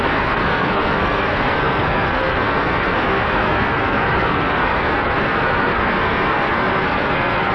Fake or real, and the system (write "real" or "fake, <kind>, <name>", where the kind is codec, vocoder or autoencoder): fake, codec, SNAC